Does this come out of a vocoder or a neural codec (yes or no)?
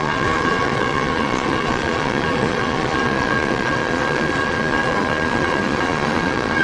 yes